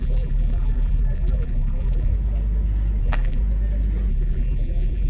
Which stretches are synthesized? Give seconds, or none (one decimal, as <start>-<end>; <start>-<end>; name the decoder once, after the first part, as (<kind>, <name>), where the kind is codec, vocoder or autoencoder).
0.0-2.1 (vocoder, BigVGAN v2); 3.0-3.4; 4.1-5.1